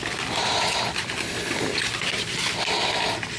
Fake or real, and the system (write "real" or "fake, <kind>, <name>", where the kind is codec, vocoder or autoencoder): real